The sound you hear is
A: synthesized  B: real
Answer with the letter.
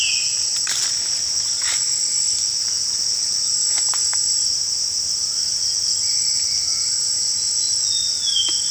B